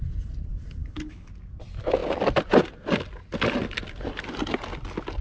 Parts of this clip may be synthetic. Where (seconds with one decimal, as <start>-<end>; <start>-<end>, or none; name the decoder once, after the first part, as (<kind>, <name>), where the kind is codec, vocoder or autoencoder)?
0.8-1.3 (codec, HILCodec)